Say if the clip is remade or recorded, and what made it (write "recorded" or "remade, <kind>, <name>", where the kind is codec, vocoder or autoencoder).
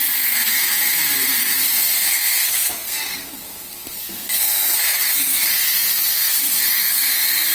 remade, codec, SNAC